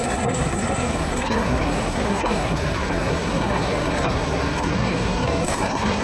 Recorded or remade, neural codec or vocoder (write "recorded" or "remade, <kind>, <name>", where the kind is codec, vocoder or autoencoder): remade, codec, SNAC